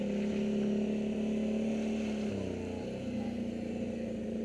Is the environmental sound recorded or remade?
recorded